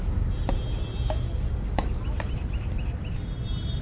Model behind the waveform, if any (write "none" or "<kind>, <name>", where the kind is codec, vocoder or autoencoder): none